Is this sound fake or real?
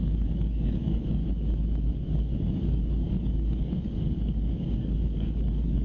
fake